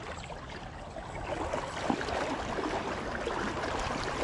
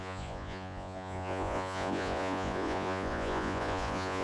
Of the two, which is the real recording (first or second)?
first